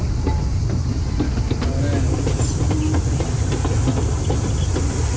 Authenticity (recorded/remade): recorded